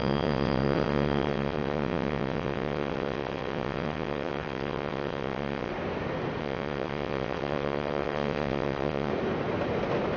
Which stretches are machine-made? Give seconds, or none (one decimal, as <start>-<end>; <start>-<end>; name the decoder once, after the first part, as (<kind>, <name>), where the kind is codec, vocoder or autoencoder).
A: 0.0-5.7 (vocoder, WaveNeXt); 6.4-9.1